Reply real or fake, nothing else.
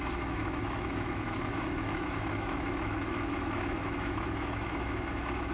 fake